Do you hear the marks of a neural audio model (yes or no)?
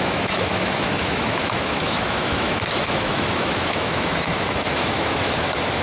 yes